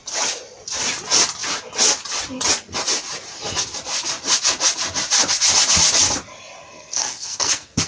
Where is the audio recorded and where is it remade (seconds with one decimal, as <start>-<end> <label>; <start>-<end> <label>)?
0.0-6.7 recorded; 6.7-7.9 remade